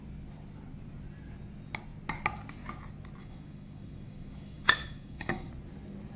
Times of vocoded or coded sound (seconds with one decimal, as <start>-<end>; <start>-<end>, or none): 3.2-5.5